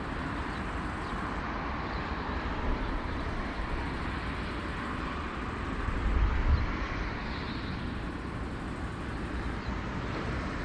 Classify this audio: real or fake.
fake